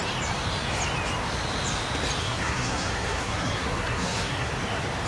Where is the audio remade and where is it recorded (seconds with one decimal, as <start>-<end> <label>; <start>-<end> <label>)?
0.0-2.2 recorded; 2.2-4.5 remade; 4.5-5.1 recorded